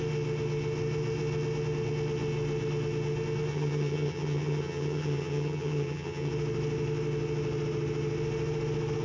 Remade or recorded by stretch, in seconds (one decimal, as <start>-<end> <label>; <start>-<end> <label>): 0.0-3.5 recorded; 3.5-6.3 remade; 6.3-9.0 recorded